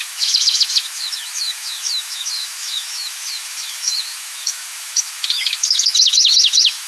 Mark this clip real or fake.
fake